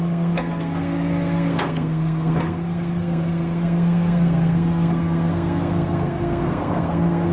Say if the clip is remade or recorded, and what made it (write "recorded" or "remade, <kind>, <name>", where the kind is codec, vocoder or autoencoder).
remade, codec, SNAC